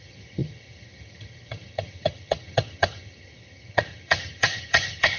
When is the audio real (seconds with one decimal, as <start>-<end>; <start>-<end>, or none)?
none